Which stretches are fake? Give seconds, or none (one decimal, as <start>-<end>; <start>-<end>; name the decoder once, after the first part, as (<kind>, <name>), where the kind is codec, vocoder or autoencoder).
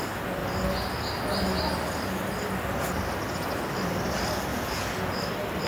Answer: 4.5-5.2 (vocoder, Vocos)